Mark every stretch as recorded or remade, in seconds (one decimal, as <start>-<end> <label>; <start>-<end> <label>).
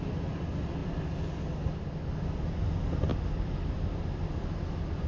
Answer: 0.0-3.1 recorded; 3.1-5.1 remade